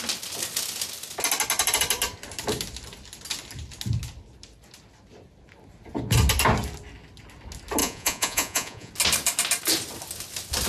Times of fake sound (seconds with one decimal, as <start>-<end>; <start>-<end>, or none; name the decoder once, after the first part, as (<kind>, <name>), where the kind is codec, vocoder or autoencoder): 7.8-8.9 (vocoder, Vocos)